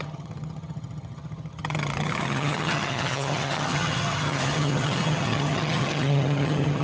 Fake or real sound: fake